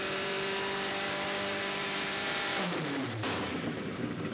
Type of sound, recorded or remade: remade